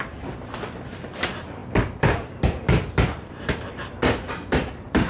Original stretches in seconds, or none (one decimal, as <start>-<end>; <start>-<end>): none